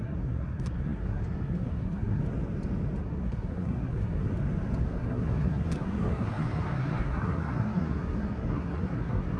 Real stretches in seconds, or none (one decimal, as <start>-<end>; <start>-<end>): 2.2-3.0; 4.3-4.8

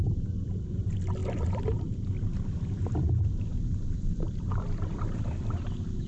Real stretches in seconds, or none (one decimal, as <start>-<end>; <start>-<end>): none